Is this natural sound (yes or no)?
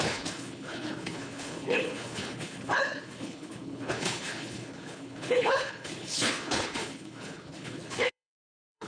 no